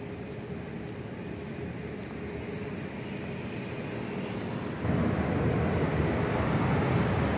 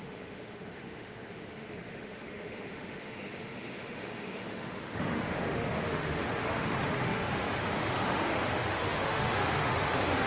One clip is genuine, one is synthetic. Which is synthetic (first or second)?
second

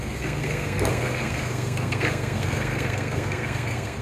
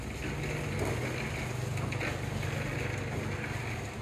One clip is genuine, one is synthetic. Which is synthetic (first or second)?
first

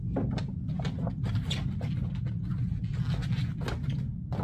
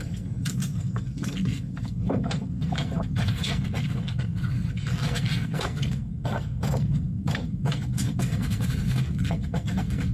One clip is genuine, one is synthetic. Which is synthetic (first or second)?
second